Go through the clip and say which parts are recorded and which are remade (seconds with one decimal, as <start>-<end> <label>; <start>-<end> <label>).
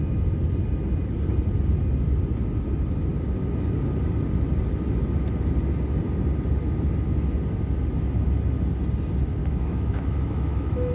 0.0-9.4 recorded; 9.4-10.9 remade